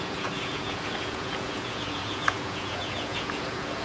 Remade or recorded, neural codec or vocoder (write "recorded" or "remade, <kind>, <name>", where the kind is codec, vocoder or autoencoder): remade, vocoder, Vocos